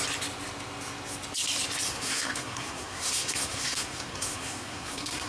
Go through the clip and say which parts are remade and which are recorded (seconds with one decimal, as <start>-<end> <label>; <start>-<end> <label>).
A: 0.0-1.9 recorded; 1.9-5.3 remade